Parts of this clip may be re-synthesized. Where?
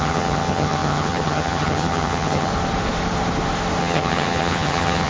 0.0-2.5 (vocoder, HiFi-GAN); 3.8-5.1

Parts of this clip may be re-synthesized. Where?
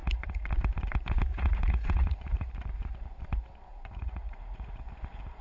0.0-0.5 (vocoder, Vocos); 1.3-2.5; 3.7-4.8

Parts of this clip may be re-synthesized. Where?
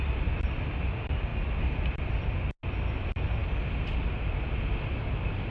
none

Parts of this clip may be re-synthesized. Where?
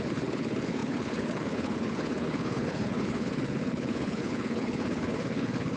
0.0-5.8 (codec, HILCodec)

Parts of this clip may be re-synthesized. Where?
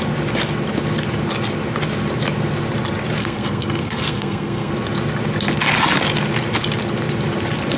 3.2-4.7 (codec, SNAC)